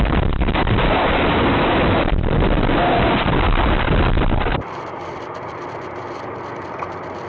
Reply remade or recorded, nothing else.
remade